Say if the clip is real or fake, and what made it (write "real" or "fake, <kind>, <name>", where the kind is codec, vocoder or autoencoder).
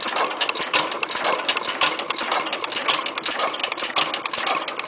real